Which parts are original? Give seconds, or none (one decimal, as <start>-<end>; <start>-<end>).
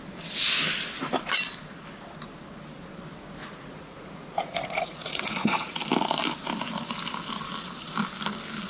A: 0.0-3.4; 5.8-8.7